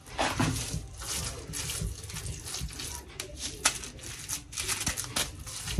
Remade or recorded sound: recorded